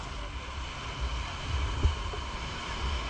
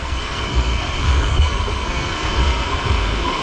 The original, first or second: first